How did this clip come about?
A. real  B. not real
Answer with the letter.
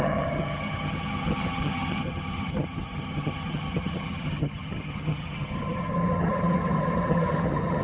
B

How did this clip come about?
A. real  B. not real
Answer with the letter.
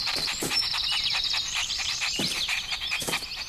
B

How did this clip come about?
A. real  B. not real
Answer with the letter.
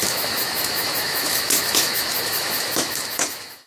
B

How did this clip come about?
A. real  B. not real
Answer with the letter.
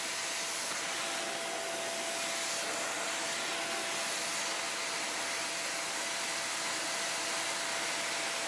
A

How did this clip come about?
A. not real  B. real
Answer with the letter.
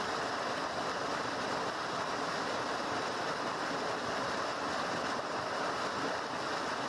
B